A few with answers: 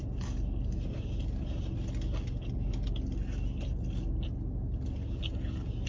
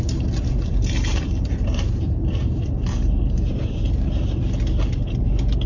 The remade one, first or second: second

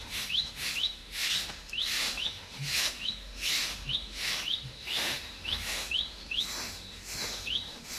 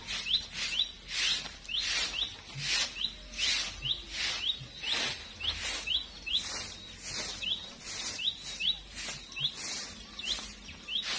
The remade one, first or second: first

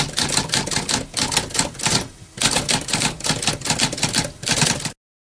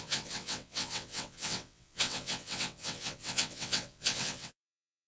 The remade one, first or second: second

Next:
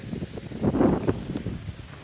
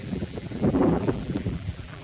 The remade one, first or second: second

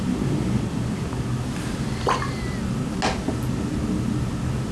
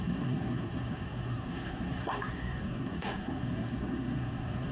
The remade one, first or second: second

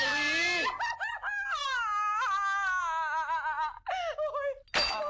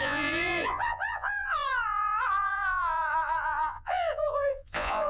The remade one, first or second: second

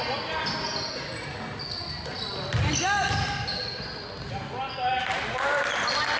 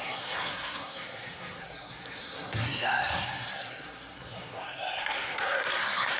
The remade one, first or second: second